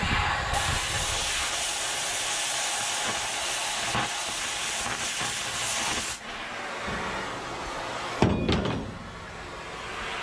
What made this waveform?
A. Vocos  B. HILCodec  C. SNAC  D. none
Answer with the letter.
D